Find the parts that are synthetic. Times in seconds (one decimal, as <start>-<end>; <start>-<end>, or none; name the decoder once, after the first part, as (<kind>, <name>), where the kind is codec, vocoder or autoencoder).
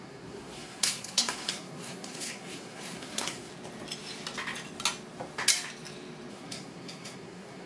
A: 0.0-3.5 (codec, SNAC); 6.3-7.7